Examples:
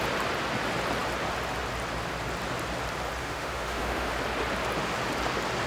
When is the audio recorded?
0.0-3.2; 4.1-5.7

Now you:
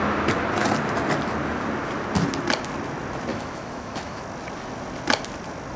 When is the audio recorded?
0.0-3.3; 4.2-5.8

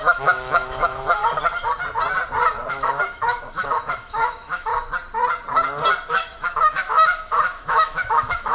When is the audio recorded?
1.2-2.7; 4.7-6.1

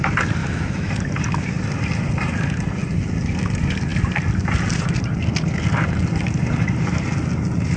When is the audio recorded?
0.0-0.4; 0.9-7.8